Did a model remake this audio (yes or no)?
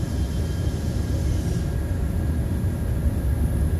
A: no